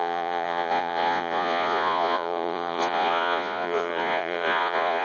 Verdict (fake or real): fake